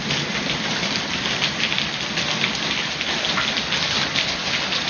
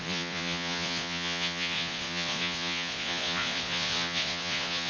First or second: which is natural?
first